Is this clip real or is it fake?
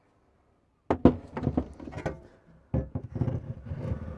real